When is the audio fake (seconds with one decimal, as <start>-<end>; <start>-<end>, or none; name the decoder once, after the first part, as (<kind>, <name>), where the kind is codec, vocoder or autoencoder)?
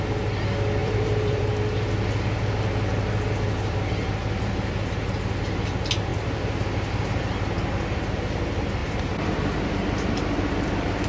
0.8-1.4 (vocoder, BigVGAN v2); 8.8-10.4